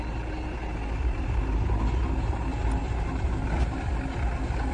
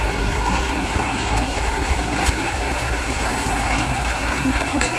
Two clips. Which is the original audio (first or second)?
first